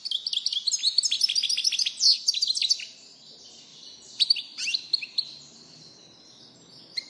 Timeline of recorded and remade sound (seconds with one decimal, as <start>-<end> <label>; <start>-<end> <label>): 0.0-7.1 recorded